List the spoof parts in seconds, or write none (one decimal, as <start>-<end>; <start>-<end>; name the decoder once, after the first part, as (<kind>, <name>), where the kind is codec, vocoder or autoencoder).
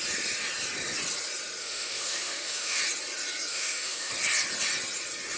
1.6-2.8 (autoencoder, DAC-VAE); 3.5-4.1